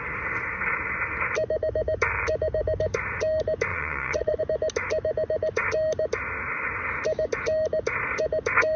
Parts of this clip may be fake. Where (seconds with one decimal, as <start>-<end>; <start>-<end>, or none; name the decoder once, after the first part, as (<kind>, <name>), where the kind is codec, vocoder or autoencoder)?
3.7-4.4 (vocoder, Vocos)